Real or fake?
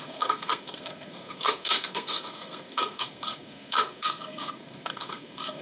fake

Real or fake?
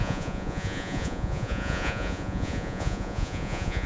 fake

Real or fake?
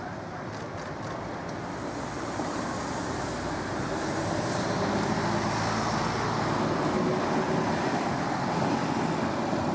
real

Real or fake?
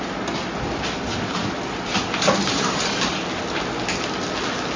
real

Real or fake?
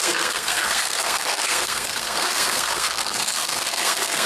fake